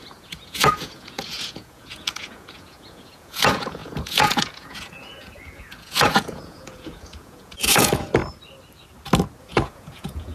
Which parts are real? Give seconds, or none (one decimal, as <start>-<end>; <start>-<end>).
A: 8.2-9.4